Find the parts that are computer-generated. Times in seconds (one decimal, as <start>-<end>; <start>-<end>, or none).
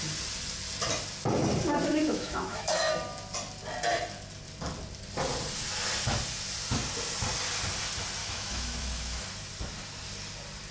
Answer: 1.9-2.9; 8.2-9.2